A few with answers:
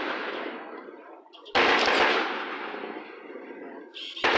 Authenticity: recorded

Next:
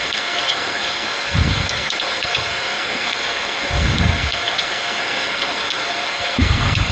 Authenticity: remade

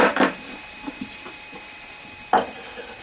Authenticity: remade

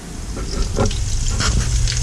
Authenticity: recorded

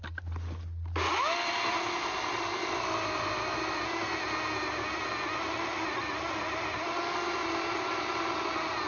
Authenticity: recorded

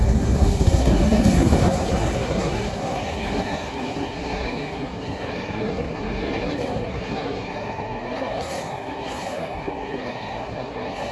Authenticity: remade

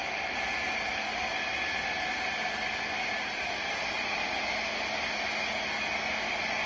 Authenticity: recorded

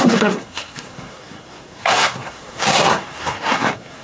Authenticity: remade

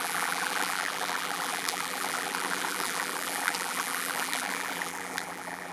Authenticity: remade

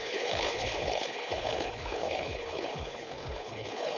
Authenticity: remade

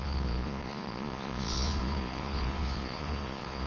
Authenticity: remade